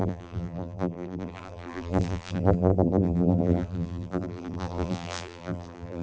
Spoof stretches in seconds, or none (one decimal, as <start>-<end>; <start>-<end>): 0.0-6.0